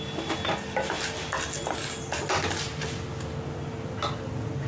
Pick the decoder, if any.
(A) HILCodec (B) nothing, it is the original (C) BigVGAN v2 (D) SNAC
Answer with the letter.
B